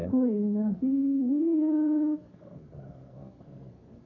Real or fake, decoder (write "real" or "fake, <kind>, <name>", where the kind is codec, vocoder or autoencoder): fake, codec, SNAC